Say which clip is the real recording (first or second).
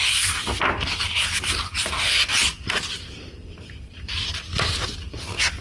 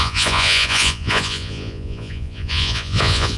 first